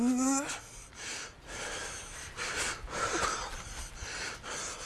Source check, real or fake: real